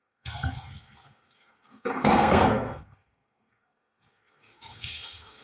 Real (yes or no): no